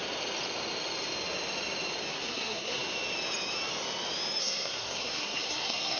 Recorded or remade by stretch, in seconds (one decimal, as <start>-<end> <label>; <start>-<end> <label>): 0.0-2.1 recorded; 2.1-2.8 remade; 2.8-4.4 recorded; 4.4-6.0 remade